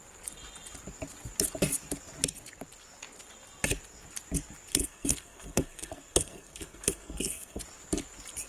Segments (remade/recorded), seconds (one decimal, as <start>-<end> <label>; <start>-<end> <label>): 0.0-4.7 recorded; 4.7-7.6 remade; 7.6-8.5 recorded